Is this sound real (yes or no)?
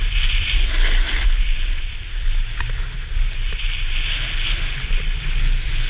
yes